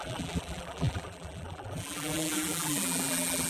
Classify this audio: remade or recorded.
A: remade